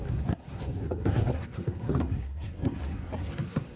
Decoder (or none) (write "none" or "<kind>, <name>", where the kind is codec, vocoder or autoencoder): codec, SNAC